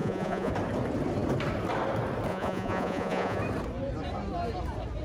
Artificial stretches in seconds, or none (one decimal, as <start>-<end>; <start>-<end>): 0.0-0.5; 2.3-3.4